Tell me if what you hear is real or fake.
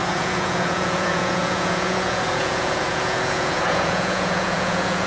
fake